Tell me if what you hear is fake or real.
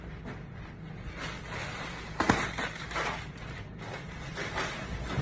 real